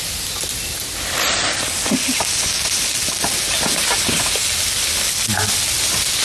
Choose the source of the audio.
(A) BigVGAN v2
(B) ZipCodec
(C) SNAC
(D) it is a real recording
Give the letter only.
D